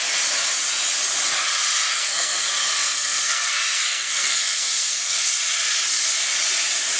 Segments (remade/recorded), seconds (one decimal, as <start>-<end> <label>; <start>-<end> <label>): 0.0-1.9 recorded; 1.9-5.3 remade; 5.3-7.0 recorded